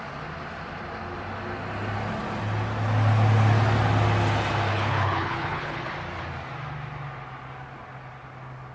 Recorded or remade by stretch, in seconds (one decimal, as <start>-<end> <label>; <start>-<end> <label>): 0.0-4.7 recorded; 4.7-5.9 remade; 5.9-8.7 recorded